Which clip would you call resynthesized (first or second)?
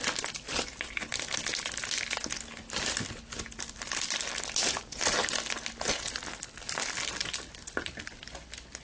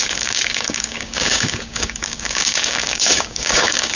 second